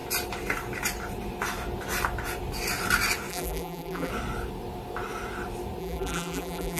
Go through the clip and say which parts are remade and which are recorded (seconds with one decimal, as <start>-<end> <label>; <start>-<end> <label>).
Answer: 0.0-3.3 recorded; 3.3-4.1 remade; 4.1-5.8 recorded; 5.8-6.8 remade